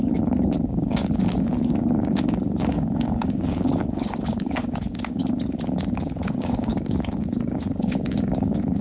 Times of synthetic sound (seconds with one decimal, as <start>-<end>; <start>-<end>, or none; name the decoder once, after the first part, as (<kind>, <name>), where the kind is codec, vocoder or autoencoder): 0.0-5.2 (codec, DAC); 5.7-8.8